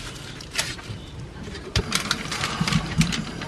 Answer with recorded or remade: remade